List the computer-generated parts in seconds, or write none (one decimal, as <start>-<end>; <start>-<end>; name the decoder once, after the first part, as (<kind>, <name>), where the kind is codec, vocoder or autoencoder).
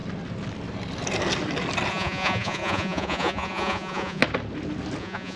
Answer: 1.9-4.2 (vocoder, Vocos); 5.0-5.4